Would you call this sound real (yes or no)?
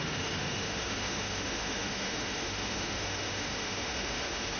no